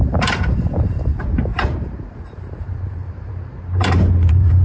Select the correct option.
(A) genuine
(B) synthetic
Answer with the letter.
B